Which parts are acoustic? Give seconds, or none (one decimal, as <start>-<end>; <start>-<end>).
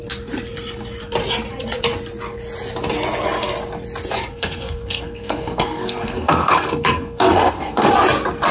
0.0-4.3; 7.9-8.5